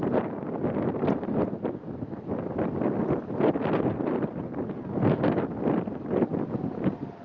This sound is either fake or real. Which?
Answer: real